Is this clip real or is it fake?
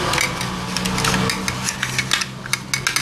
real